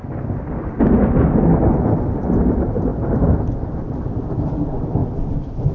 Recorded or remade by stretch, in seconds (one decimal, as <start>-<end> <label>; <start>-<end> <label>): 0.0-5.7 recorded